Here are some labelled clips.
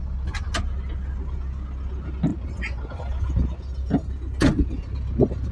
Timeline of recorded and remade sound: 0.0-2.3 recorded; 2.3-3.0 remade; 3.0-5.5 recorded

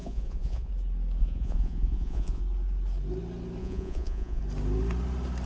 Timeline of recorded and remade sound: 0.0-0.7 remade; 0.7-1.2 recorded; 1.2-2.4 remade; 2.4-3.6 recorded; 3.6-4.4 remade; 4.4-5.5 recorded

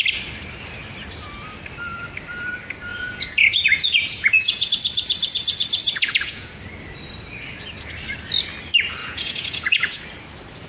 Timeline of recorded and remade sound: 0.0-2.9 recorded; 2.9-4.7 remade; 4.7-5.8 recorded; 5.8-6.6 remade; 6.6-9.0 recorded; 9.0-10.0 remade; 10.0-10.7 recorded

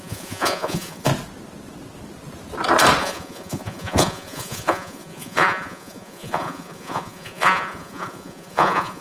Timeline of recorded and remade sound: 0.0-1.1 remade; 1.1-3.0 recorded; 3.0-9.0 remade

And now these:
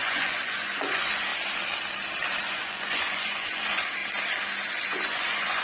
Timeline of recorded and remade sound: 0.0-1.3 remade; 1.3-2.4 recorded; 2.4-4.0 remade; 4.0-4.7 recorded; 4.7-5.6 remade

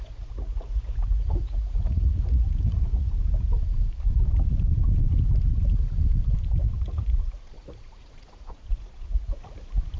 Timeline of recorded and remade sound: 0.0-3.1 remade; 3.1-6.8 recorded; 6.8-9.3 remade; 9.3-10.0 recorded

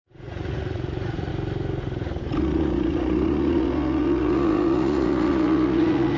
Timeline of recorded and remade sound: 0.0-1.3 remade; 1.3-2.4 recorded; 2.4-6.2 remade

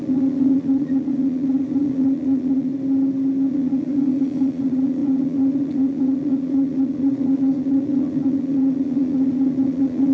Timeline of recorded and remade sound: 0.0-2.7 remade; 2.7-3.5 recorded; 3.5-10.1 remade